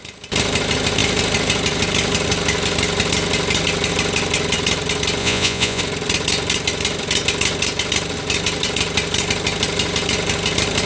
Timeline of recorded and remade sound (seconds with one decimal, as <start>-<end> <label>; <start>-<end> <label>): 0.0-5.2 recorded; 5.2-5.8 remade; 5.8-10.9 recorded